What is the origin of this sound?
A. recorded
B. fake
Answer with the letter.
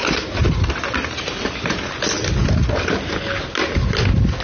A